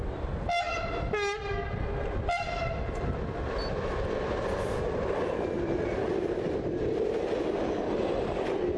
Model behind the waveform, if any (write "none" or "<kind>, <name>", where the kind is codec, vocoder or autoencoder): none